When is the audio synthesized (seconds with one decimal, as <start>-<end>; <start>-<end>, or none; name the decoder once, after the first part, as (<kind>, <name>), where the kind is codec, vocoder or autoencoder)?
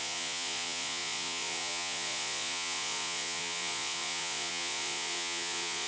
0.0-5.9 (vocoder, Vocos)